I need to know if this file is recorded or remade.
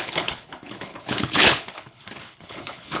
remade